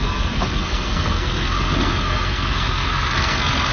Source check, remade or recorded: remade